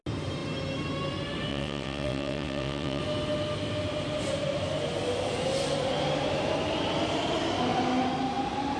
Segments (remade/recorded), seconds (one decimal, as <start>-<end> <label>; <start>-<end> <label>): 0.0-1.5 recorded; 1.5-3.0 remade; 3.0-8.8 recorded